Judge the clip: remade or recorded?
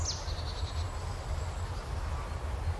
recorded